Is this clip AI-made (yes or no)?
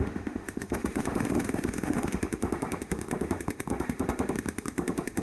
yes